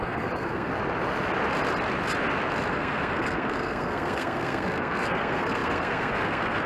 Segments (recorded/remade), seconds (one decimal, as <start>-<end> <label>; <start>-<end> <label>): 0.0-0.7 remade; 0.7-2.7 recorded; 2.7-6.7 remade